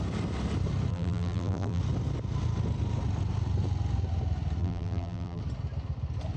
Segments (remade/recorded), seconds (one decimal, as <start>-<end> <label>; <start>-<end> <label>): 0.0-0.9 recorded; 0.9-1.8 remade; 1.8-4.6 recorded; 4.6-5.4 remade; 5.4-6.4 recorded

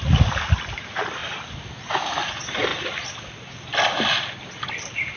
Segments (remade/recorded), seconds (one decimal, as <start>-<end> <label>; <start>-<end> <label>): 0.0-5.2 recorded

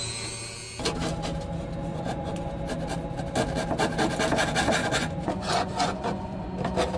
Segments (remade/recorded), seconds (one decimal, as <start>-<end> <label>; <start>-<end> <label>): 0.0-1.9 recorded; 1.9-2.5 remade; 2.5-4.8 recorded; 4.8-6.5 remade; 6.5-7.0 recorded

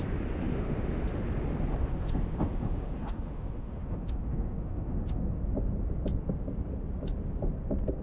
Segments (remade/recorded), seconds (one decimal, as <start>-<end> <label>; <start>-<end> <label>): 0.0-0.4 recorded; 0.4-1.0 remade; 1.0-1.8 recorded; 1.8-5.4 remade; 5.4-8.0 recorded

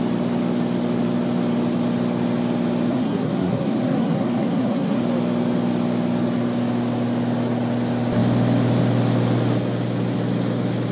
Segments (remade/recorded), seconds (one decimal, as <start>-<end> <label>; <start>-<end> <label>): 0.0-2.9 recorded; 2.9-5.0 remade; 5.0-10.9 recorded

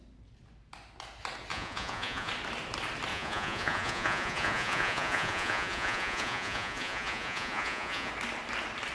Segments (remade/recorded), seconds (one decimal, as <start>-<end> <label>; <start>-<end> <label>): 0.0-1.5 recorded; 1.5-2.3 remade; 2.3-3.1 recorded; 3.1-8.1 remade; 8.1-8.9 recorded